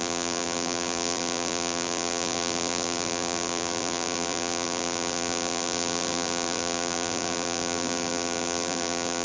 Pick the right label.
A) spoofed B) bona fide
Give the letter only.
A